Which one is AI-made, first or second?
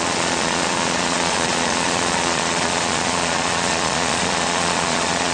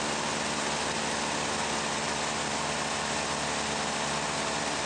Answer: first